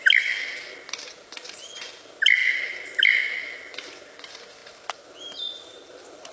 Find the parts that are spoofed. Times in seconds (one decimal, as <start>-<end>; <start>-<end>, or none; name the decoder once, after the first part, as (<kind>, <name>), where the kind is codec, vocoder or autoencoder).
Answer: 2.4-3.1 (vocoder, BigVGAN v2)